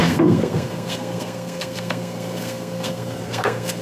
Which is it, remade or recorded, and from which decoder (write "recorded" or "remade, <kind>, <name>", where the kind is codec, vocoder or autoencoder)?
remade, codec, SNAC